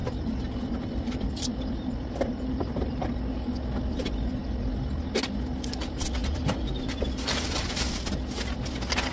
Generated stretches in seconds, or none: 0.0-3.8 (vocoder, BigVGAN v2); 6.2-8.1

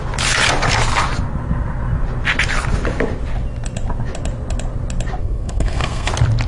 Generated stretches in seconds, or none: 5.2-6.1 (codec, SNAC)

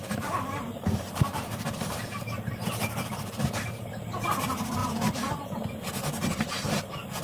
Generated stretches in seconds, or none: 0.0-4.0 (vocoder, BigVGAN v2); 4.8-6.8

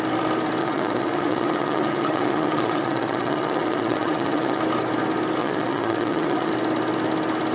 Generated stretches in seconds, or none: 0.6-4.6 (vocoder, Vocos); 5.4-6.5